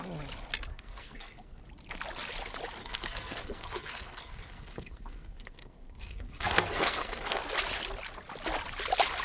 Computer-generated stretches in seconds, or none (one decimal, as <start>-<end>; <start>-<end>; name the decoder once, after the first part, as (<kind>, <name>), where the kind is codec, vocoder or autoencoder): 0.7-1.6 (codec, SNAC); 2.8-7.4

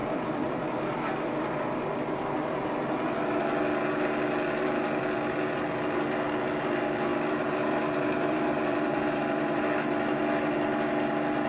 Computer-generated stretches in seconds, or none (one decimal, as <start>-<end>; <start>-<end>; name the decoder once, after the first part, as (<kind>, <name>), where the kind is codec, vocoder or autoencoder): 0.0-3.4 (vocoder, BigVGAN v2); 7.1-9.6

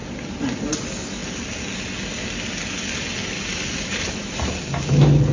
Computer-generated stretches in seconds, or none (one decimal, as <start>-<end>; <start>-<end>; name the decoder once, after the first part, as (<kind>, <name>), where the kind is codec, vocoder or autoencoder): 3.2-4.5 (vocoder, BigVGAN v2)

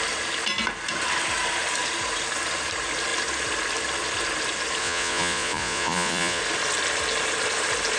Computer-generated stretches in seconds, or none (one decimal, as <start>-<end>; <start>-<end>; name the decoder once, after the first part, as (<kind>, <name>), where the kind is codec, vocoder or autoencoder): 4.8-6.4 (vocoder, Vocos)

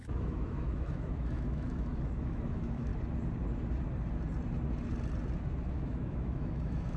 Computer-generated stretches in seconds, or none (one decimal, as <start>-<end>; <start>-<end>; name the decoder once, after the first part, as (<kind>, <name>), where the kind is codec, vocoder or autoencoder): 0.0-2.9 (autoencoder, DAC-VAE); 5.7-7.0

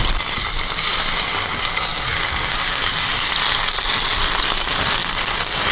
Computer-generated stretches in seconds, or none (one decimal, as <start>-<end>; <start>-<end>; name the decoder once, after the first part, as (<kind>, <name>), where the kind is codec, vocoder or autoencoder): 1.9-2.9 (codec, DAC)

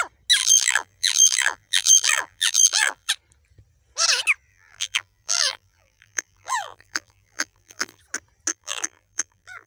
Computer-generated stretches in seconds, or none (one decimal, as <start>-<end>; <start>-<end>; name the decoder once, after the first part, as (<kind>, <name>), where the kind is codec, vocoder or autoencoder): 0.4-3.1 (vocoder, BigVGAN v2); 4.5-8.0; 8.5-9.7